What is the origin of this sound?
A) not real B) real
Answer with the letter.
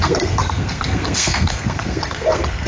A